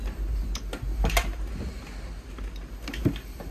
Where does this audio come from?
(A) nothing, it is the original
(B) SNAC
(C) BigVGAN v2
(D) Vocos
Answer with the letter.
A